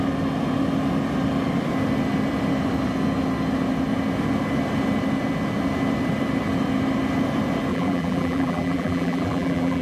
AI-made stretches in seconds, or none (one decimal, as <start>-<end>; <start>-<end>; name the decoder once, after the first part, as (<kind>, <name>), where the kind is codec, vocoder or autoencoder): 7.7-9.8 (vocoder, BigVGAN v2)